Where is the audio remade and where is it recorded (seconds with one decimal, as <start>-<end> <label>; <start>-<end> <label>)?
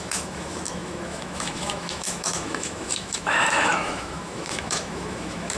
0.0-5.6 remade